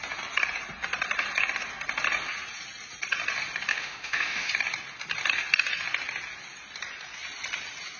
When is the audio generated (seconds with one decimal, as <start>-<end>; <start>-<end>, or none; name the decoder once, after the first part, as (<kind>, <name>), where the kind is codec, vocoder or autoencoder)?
3.7-4.5 (autoencoder, DAC-VAE)